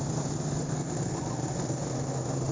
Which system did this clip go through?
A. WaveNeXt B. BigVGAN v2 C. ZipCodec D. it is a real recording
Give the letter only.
D